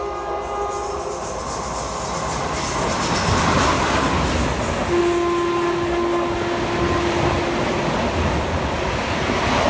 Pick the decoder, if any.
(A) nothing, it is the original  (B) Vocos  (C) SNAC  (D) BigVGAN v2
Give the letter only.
A